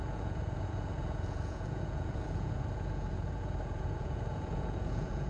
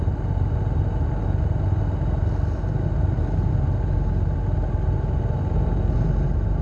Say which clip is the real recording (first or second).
second